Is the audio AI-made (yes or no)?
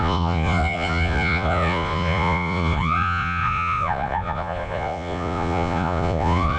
yes